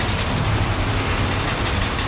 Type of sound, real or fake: real